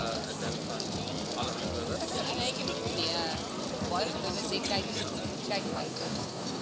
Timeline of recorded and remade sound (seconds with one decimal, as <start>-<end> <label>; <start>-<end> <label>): 0.0-5.6 recorded; 5.6-6.6 remade